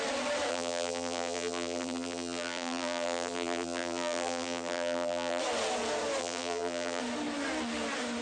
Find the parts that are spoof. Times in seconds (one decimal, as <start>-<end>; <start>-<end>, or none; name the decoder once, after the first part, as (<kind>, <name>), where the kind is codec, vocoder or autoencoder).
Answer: 0.5-5.4 (vocoder, BigVGAN v2); 6.2-7.0